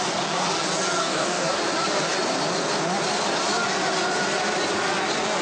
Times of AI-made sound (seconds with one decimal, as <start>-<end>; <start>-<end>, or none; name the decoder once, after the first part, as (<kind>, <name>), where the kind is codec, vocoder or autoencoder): 1.0-1.6 (codec, DAC)